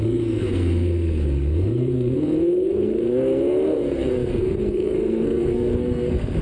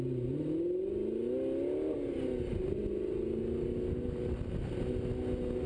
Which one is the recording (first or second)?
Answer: second